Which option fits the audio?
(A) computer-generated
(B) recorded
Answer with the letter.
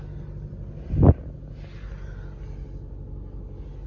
B